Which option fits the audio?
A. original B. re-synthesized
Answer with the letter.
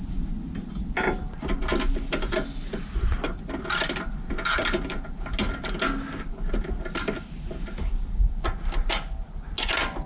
A